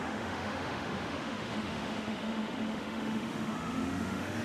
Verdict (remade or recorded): remade